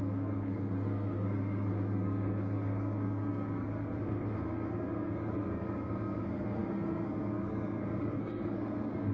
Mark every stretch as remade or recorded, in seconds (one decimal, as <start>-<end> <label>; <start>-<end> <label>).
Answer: 0.0-9.1 remade